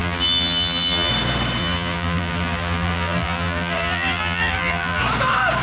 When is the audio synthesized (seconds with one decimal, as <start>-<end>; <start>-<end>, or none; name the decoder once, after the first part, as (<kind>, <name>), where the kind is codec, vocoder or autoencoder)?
0.0-1.1 (vocoder, BigVGAN v2); 1.6-5.0